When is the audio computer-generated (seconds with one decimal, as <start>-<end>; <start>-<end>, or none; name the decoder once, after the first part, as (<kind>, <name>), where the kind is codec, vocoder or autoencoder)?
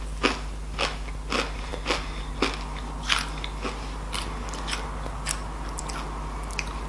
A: none